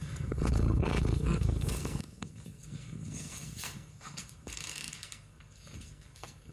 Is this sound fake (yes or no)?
yes